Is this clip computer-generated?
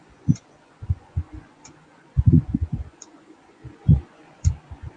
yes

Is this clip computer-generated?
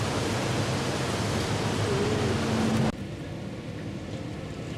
no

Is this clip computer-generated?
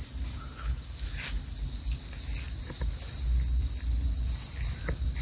no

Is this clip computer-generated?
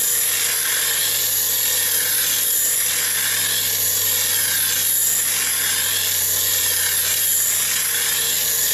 no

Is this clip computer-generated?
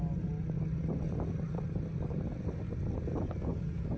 no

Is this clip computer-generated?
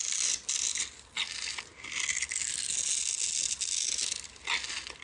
no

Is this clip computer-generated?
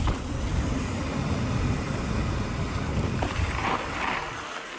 no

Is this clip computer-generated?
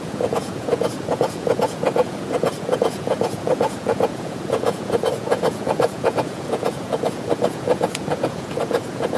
yes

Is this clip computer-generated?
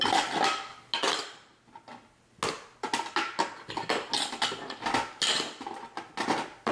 no